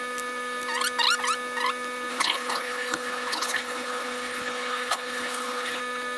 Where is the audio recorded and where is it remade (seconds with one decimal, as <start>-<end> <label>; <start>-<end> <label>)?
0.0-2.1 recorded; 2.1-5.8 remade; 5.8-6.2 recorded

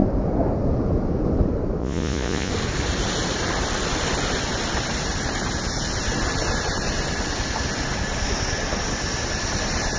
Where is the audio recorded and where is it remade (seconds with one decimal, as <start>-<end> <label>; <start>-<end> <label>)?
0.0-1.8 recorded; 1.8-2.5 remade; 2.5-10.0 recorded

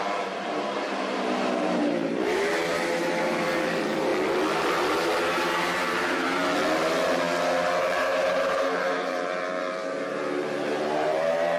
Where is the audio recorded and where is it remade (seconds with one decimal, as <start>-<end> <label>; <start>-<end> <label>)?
0.0-4.1 remade; 4.1-5.3 recorded; 5.3-6.4 remade; 6.4-7.8 recorded; 7.8-11.6 remade

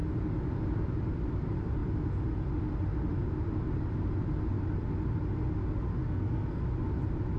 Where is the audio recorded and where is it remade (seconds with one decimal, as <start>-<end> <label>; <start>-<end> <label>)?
0.0-6.0 recorded; 6.0-6.6 remade; 6.6-7.4 recorded

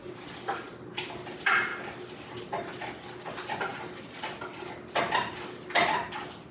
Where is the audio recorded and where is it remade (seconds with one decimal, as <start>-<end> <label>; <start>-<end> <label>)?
0.0-6.5 recorded

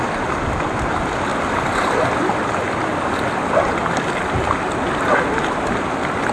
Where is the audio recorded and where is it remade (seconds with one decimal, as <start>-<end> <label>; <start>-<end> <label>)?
0.0-6.3 recorded

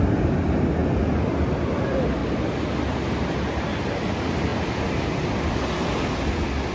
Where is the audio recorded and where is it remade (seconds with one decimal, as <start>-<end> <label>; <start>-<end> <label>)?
0.0-6.7 recorded

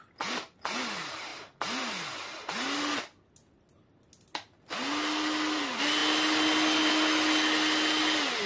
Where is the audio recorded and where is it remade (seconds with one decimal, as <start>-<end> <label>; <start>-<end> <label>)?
0.0-8.5 recorded